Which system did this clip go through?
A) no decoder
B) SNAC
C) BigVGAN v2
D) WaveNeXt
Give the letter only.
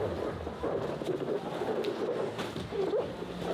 A